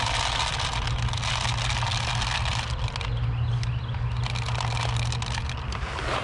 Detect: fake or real real